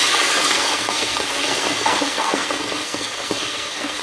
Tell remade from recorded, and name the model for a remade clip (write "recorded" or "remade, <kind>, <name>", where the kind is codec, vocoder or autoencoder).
remade, codec, SNAC